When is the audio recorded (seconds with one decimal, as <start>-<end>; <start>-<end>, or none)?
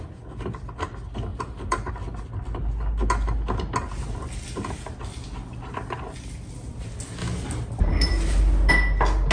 0.0-1.3; 1.9-9.3